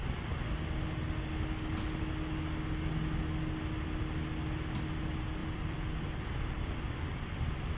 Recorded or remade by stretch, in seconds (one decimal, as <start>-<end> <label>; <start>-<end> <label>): 0.0-5.4 recorded; 5.4-7.8 remade